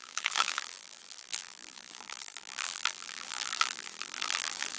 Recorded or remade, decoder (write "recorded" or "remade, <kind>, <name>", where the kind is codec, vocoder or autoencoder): remade, vocoder, BigVGAN v2